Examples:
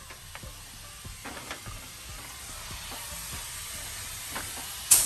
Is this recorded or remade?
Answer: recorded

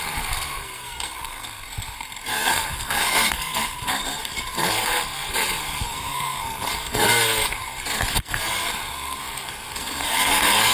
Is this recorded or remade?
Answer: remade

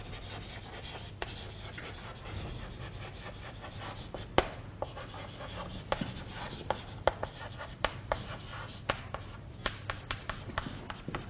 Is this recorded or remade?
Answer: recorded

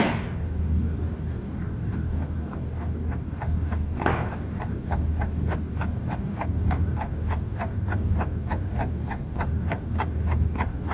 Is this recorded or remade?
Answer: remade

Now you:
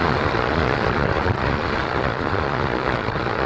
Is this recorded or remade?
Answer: remade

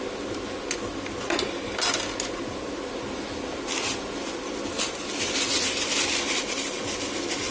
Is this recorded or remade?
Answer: recorded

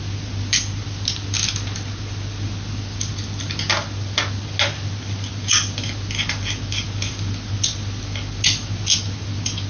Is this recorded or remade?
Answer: recorded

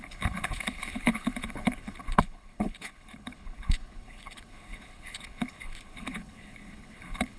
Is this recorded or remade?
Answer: remade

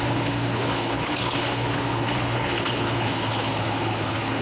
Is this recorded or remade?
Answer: remade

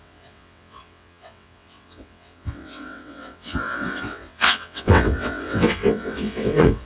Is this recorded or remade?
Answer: remade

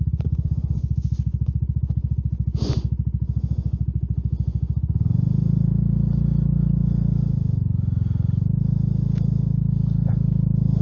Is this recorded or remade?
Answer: recorded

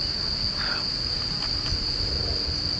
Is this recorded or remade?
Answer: recorded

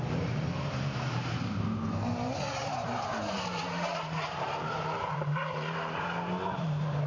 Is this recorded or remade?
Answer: remade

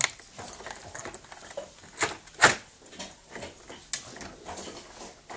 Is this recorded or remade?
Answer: recorded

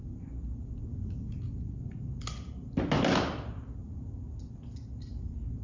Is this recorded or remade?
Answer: recorded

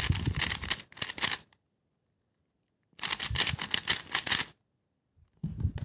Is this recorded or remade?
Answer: recorded